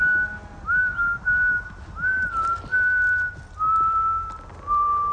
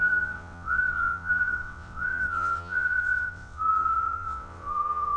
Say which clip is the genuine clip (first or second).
first